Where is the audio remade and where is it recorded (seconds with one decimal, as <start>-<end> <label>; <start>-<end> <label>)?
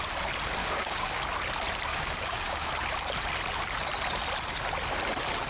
0.0-0.6 recorded; 0.6-1.2 remade; 1.2-1.9 recorded; 1.9-2.7 remade; 2.7-5.5 recorded